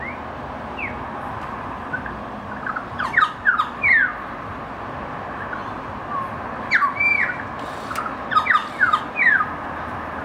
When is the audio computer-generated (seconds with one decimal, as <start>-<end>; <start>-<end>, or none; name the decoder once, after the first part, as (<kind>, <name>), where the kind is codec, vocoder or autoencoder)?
none